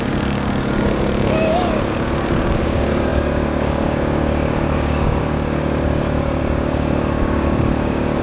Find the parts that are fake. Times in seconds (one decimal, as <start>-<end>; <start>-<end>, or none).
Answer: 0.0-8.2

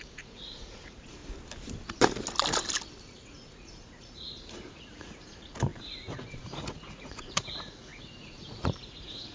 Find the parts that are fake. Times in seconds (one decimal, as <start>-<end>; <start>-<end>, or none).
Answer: 0.0-1.2; 3.0-9.3

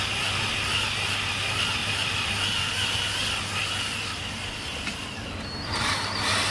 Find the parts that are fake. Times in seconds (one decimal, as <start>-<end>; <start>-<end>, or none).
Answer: 1.8-2.3

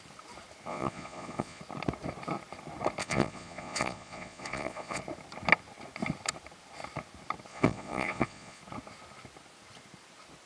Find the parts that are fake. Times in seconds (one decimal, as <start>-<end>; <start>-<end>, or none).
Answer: 0.7-1.6; 3.0-5.0; 7.5-8.6

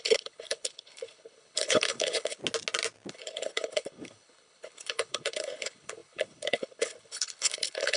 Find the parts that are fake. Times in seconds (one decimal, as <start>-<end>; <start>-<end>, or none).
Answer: 0.0-2.4; 3.1-8.0

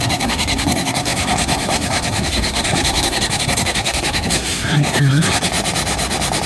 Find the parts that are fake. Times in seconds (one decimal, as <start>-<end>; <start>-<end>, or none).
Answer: 0.0-5.5

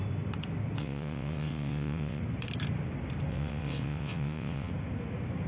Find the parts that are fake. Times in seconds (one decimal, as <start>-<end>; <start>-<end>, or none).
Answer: 0.8-2.2; 3.3-4.7